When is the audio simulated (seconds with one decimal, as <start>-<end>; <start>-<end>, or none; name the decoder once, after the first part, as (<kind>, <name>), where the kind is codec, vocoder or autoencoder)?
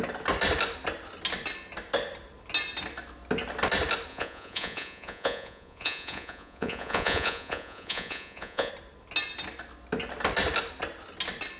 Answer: 4.1-8.7 (vocoder, Vocos)